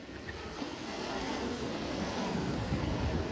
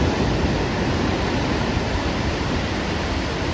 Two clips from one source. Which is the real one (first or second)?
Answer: second